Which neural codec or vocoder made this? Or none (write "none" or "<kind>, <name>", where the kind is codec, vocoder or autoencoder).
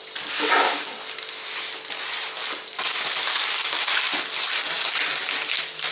none